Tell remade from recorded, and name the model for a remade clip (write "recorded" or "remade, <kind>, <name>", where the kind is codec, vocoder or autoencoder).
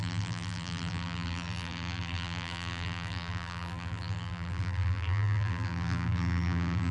remade, vocoder, BigVGAN v2